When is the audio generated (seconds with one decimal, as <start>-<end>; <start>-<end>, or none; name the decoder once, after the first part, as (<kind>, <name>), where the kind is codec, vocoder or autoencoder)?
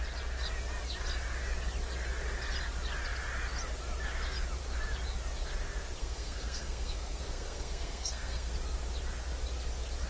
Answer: 6.0-8.5 (codec, SNAC)